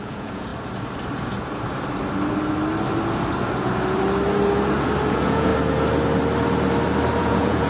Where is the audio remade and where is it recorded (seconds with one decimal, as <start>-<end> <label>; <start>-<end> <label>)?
0.0-0.5 remade; 0.5-5.1 recorded; 5.1-5.5 remade; 5.5-7.2 recorded; 7.2-7.7 remade